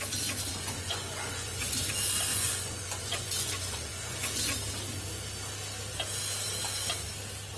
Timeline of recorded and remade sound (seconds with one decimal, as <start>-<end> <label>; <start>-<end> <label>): 0.0-0.5 recorded; 0.5-1.9 remade; 1.9-2.3 recorded; 2.3-4.4 remade; 4.4-7.6 recorded